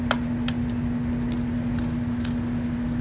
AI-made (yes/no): no